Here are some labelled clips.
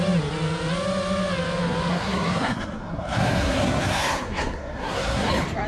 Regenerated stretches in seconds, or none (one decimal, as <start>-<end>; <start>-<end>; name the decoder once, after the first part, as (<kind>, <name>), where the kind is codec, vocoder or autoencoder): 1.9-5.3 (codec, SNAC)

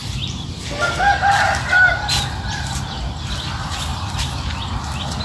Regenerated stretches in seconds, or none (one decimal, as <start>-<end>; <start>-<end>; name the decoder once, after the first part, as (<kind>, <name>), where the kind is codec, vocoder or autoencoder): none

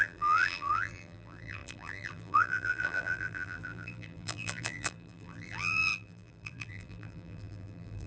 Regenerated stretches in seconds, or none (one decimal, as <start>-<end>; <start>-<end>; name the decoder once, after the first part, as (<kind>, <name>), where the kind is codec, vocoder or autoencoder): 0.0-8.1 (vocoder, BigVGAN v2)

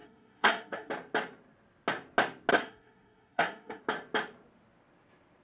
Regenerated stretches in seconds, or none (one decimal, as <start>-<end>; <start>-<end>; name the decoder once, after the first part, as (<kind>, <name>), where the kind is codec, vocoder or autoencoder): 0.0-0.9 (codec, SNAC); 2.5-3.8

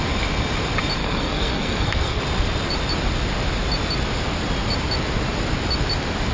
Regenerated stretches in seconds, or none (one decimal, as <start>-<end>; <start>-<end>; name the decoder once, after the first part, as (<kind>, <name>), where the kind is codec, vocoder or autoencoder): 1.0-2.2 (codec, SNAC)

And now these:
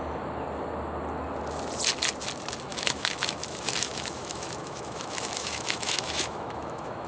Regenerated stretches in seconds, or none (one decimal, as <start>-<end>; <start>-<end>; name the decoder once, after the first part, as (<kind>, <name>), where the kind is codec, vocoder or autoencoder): 2.7-7.1 (autoencoder, DAC-VAE)

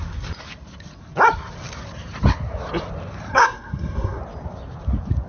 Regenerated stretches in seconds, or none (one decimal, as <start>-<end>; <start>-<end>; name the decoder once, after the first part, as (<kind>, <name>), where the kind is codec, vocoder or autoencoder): 3.3-4.2 (codec, SNAC)

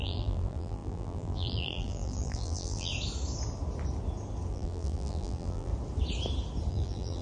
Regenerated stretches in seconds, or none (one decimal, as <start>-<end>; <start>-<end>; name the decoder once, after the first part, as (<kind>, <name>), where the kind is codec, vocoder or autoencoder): 0.0-2.9 (vocoder, BigVGAN v2); 4.5-5.7; 6.7-7.2